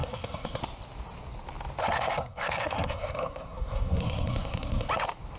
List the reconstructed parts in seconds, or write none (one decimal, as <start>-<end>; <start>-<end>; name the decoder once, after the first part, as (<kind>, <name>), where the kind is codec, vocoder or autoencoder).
0.0-0.6 (codec, SNAC); 1.8-4.9